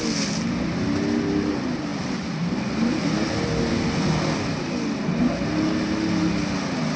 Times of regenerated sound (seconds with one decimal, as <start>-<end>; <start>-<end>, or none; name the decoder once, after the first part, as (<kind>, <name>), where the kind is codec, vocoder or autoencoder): none